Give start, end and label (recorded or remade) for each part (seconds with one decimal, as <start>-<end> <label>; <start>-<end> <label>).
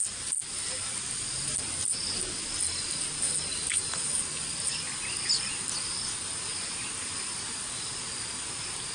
0.0-8.9 recorded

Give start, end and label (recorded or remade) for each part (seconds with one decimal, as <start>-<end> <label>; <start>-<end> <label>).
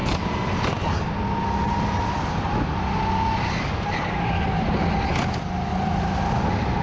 0.0-6.8 recorded